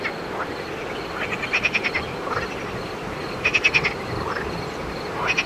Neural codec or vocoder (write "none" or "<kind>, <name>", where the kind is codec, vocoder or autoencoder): none